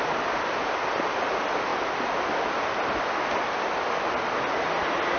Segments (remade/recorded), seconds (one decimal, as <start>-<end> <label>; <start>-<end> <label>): 0.0-5.2 recorded